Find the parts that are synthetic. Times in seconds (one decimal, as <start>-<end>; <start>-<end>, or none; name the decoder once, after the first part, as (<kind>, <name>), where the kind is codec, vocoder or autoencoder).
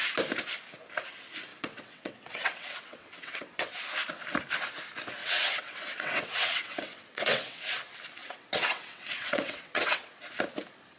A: 1.5-3.7 (vocoder, WaveNeXt); 5.2-7.6; 8.2-10.1